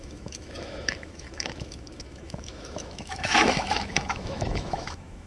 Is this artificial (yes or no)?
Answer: yes